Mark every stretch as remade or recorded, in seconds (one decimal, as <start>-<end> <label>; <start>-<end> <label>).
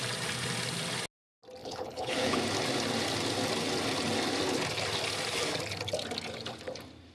0.0-1.6 recorded; 1.6-2.4 remade; 2.4-7.1 recorded